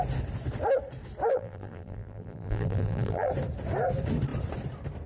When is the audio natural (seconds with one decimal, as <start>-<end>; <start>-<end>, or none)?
0.0-1.3; 3.3-5.1